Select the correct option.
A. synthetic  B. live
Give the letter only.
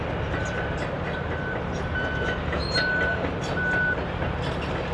B